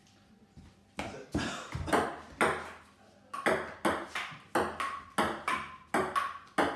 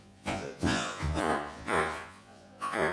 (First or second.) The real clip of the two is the first